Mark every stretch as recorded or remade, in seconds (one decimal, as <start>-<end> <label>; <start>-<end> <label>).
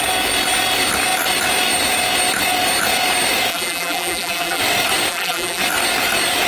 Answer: 0.0-3.5 recorded; 3.5-4.6 remade; 4.6-5.1 recorded; 5.1-5.6 remade; 5.6-6.5 recorded